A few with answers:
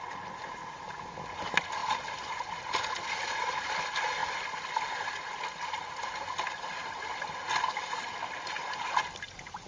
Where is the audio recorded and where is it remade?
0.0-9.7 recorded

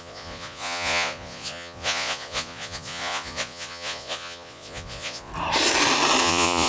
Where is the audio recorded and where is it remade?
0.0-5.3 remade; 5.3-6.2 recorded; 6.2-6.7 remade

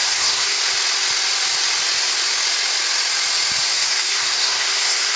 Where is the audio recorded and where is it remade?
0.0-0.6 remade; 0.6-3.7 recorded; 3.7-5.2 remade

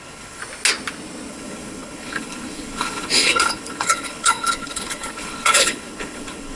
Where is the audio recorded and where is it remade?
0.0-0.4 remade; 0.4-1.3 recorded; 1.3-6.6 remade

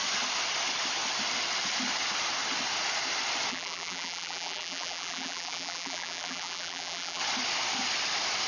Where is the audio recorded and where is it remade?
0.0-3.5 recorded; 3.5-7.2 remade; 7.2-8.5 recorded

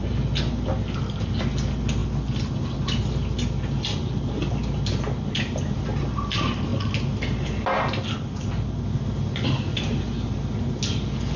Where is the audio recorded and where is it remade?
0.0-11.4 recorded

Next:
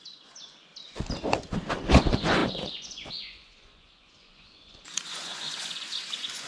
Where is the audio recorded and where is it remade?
0.0-0.7 remade; 0.7-1.9 recorded; 1.9-6.5 remade

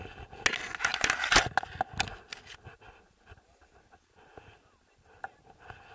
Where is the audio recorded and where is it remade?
0.0-5.9 recorded